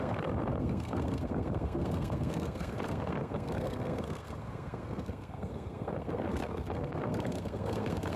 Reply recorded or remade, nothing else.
remade